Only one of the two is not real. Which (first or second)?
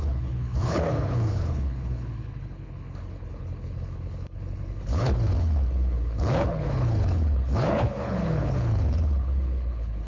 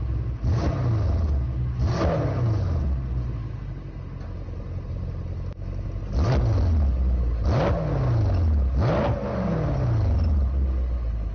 first